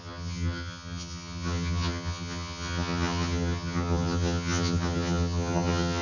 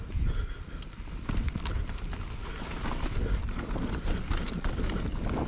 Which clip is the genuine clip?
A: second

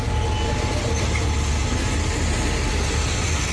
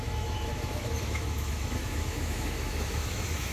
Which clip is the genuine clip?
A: first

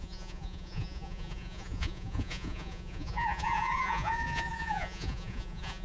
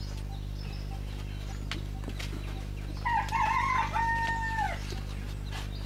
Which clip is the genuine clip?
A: second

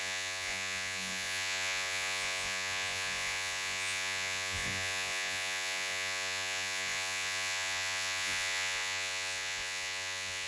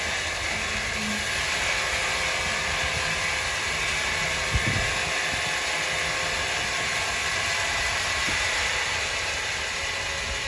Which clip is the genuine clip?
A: second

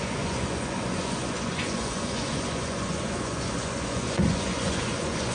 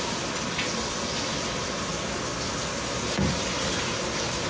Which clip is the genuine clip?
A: second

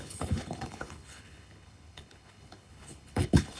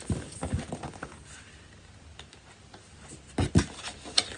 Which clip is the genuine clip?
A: second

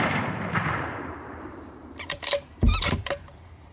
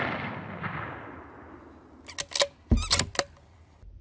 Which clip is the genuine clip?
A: second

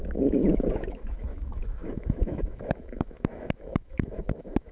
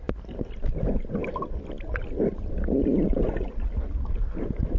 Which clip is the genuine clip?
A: second